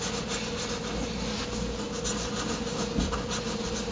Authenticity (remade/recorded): recorded